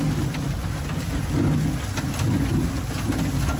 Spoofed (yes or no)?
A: no